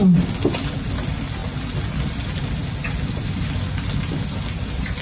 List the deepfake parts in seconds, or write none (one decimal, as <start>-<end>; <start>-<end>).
none